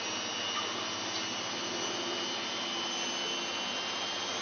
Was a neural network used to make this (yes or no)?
no